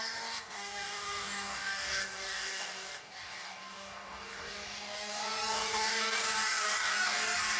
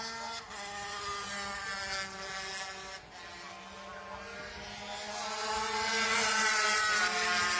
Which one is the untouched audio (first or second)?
second